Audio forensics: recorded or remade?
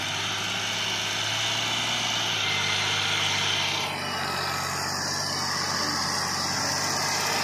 recorded